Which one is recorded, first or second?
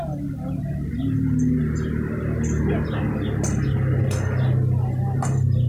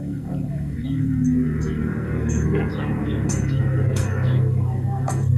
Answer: first